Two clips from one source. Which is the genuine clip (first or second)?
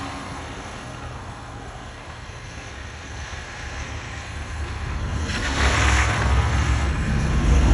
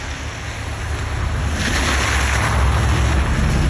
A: second